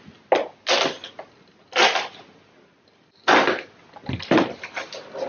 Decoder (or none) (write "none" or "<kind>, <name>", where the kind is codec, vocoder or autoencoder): none